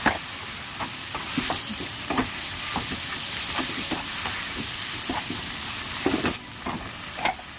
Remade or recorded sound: recorded